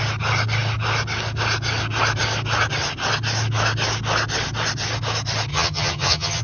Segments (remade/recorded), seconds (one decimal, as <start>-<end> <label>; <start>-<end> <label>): 0.0-5.5 recorded; 5.5-6.4 remade